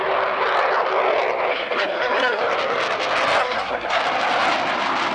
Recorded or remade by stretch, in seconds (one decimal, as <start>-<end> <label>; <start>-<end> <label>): 0.0-1.5 recorded; 1.5-2.4 remade; 2.4-3.4 recorded; 3.4-4.0 remade; 4.0-5.1 recorded